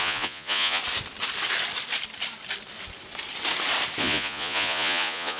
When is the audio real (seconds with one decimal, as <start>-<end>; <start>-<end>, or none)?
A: 0.8-4.0